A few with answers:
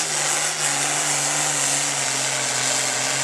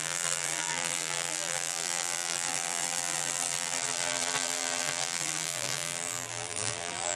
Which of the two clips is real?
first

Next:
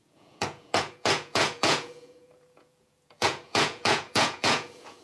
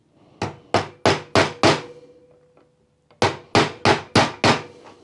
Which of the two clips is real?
second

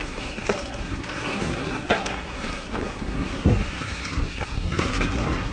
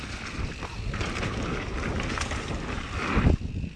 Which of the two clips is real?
second